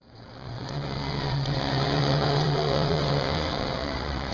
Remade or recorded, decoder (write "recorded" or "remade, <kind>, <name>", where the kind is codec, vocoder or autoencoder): remade, vocoder, WaveNeXt